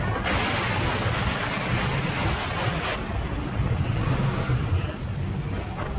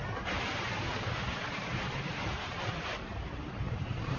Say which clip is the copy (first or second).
second